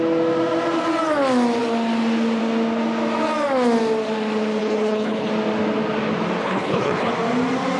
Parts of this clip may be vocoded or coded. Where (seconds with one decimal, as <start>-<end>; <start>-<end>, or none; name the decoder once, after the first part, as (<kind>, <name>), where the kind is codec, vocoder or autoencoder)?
4.6-5.3 (codec, HILCodec); 6.4-7.1